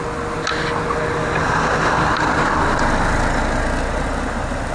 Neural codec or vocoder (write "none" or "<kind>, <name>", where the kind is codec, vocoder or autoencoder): none